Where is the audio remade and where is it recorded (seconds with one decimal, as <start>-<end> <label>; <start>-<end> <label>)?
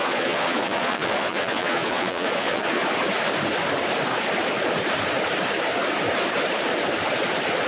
0.0-2.8 remade; 2.8-7.7 recorded